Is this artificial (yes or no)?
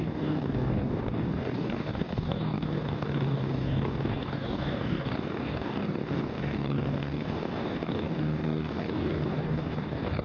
yes